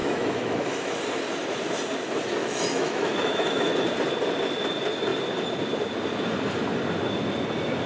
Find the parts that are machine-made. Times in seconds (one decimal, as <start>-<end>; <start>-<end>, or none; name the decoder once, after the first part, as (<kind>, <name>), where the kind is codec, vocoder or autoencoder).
0.0-0.9 (autoencoder, DAC-VAE); 2.4-3.7